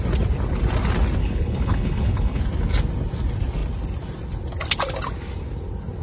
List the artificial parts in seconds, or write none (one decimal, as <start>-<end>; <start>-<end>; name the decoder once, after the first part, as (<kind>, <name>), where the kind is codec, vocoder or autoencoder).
1.2-2.4 (codec, HILCodec)